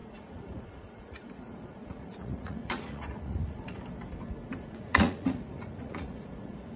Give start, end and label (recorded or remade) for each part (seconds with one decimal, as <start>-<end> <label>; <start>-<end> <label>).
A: 0.0-3.8 remade; 3.8-4.6 recorded; 4.6-6.8 remade